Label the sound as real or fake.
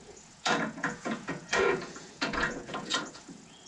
fake